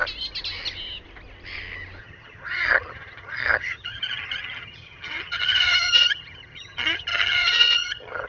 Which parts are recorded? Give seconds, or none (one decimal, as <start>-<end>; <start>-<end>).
0.0-2.0